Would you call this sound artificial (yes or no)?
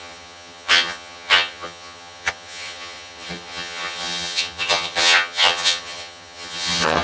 yes